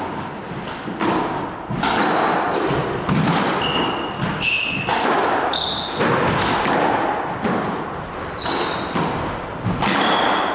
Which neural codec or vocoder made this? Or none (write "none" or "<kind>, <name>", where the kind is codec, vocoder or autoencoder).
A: none